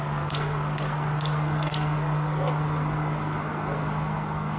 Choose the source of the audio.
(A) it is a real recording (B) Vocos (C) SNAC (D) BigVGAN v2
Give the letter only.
C